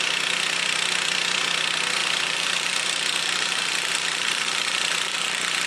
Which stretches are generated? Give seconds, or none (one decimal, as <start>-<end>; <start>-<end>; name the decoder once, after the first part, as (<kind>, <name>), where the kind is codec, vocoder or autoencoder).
2.0-5.7 (vocoder, BigVGAN v2)